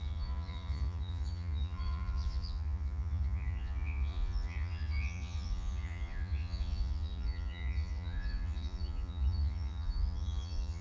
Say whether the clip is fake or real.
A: fake